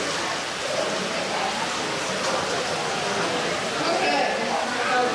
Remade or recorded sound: recorded